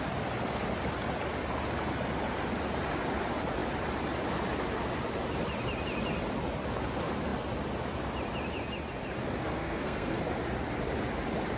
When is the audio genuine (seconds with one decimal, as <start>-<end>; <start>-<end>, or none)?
0.0-9.4; 10.2-11.6